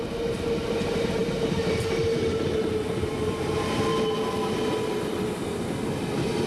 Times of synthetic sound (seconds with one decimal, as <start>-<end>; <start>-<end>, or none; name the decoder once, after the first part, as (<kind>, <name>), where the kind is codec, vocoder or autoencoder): none